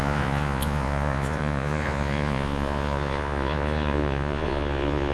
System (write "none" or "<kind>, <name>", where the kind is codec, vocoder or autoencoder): vocoder, Vocos